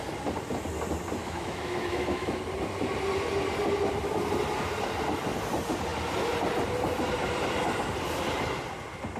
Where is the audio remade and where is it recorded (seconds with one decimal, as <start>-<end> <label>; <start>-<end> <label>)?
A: 0.0-1.2 recorded; 1.2-2.4 remade; 2.4-9.2 recorded